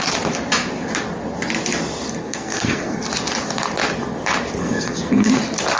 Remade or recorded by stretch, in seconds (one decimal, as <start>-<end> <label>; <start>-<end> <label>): 0.0-2.2 recorded; 2.2-3.1 remade; 3.1-4.6 recorded; 4.6-5.3 remade; 5.3-5.8 recorded